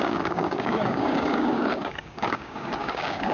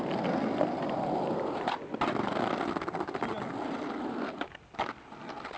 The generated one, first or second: first